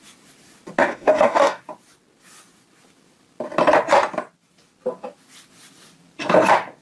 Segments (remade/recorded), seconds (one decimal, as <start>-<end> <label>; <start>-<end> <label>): 0.0-0.8 recorded; 0.8-1.6 remade; 1.6-6.8 recorded